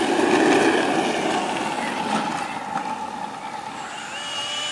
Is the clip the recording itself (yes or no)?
yes